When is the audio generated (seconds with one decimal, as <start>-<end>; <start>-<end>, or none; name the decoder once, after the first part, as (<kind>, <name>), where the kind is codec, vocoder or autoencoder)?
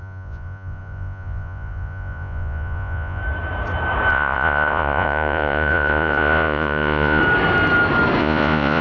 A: 0.0-3.2 (vocoder, Vocos); 4.1-7.2; 8.2-8.8